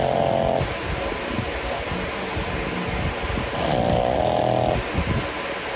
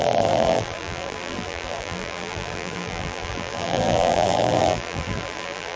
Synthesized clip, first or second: second